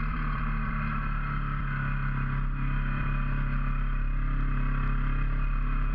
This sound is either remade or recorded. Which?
remade